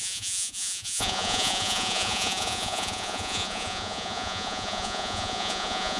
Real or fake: fake